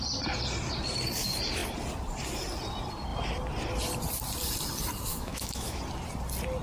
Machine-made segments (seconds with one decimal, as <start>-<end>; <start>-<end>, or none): 5.1-5.8